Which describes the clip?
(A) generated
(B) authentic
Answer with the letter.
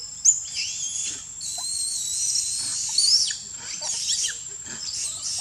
B